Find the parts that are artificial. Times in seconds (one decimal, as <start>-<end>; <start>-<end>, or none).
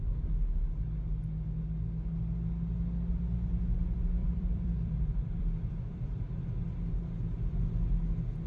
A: 4.2-6.5